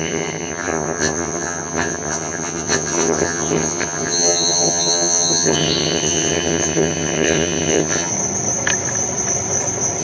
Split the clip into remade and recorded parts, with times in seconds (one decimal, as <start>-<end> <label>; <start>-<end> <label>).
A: 0.0-8.1 remade; 8.1-10.0 recorded

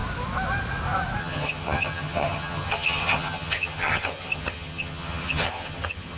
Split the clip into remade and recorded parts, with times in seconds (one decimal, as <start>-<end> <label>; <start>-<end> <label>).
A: 0.0-1.2 recorded; 1.2-6.2 remade

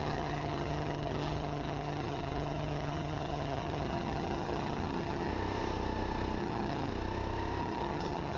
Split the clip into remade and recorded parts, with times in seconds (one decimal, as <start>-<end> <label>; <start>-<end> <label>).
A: 0.0-5.3 remade; 5.3-6.4 recorded; 6.4-6.9 remade; 6.9-7.6 recorded; 7.6-8.4 remade